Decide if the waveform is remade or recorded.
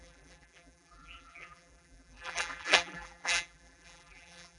remade